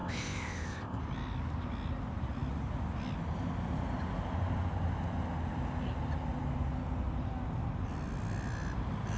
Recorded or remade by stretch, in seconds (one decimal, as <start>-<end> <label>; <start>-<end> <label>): 0.0-1.0 remade; 1.0-9.2 recorded